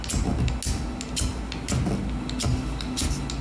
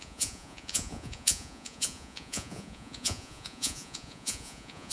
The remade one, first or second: second